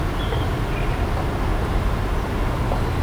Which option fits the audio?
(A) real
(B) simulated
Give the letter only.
A